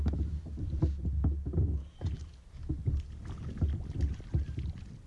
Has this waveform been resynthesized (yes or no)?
no